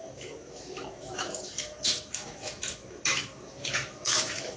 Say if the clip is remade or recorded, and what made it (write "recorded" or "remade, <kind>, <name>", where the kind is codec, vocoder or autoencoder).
remade, autoencoder, DAC-VAE